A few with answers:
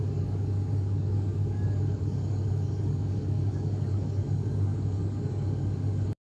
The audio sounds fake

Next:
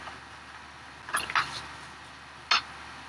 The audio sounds real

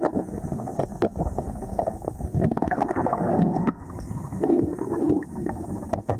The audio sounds fake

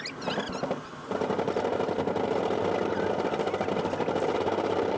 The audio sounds real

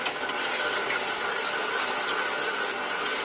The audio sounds real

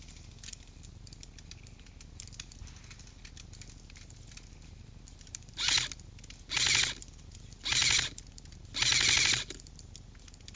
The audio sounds real